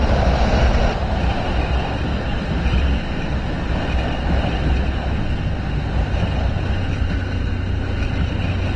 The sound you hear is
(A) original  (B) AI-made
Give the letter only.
A